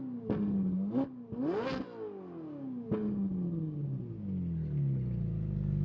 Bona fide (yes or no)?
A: yes